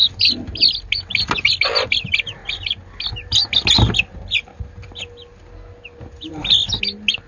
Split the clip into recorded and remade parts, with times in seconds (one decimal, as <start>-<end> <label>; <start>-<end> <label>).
0.0-7.3 recorded